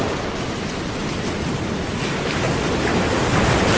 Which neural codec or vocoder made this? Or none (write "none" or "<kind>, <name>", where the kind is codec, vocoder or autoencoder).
none